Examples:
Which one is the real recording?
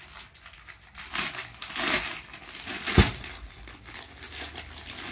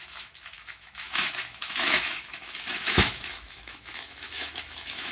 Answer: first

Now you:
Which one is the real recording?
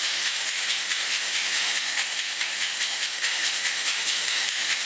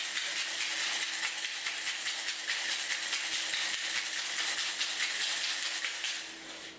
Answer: second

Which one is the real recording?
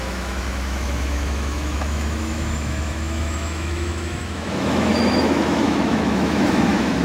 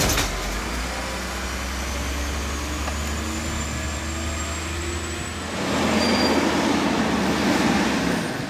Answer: second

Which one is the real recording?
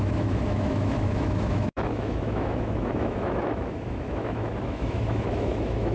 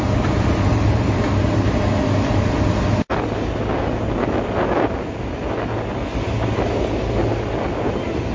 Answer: second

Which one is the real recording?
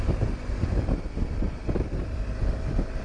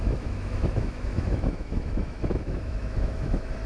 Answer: first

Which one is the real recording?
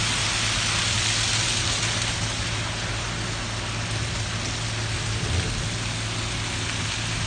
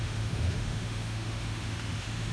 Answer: first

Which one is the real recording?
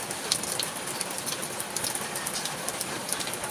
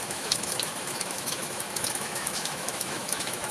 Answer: first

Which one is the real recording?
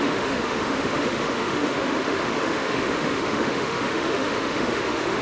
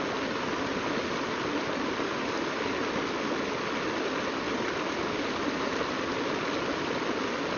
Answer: second